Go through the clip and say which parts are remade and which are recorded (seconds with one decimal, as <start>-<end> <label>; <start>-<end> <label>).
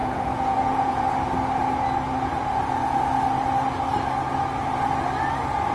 0.0-1.0 remade; 1.0-5.7 recorded